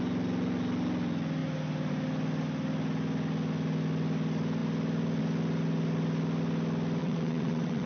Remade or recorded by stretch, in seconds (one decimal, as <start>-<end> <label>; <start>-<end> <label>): 0.0-7.0 recorded; 7.0-7.9 remade